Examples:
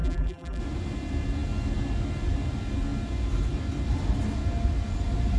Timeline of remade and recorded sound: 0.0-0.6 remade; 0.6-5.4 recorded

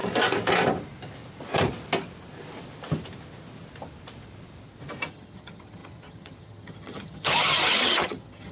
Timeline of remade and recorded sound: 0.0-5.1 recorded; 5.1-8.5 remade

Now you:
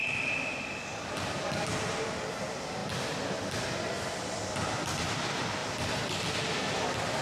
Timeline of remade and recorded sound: 0.0-0.5 recorded; 0.5-2.8 remade; 2.8-3.8 recorded; 3.8-7.2 remade